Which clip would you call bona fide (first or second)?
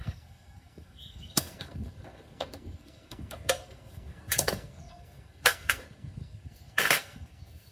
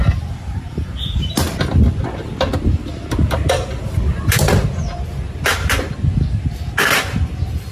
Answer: second